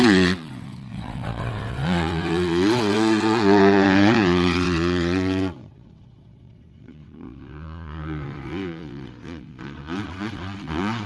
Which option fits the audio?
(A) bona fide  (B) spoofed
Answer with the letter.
B